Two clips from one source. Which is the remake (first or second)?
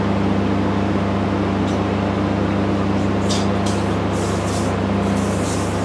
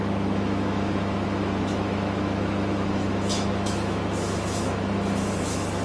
second